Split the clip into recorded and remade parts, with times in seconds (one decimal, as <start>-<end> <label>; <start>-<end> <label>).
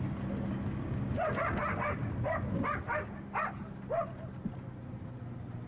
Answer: 0.0-5.7 recorded